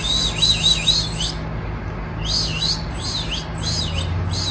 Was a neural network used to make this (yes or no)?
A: no